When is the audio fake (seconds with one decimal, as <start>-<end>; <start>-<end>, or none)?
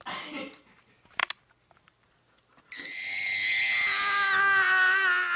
none